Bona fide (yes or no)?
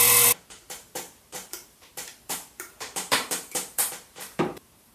no